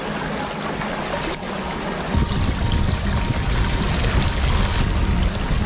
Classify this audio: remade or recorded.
recorded